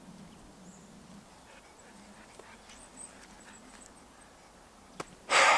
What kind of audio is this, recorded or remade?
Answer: recorded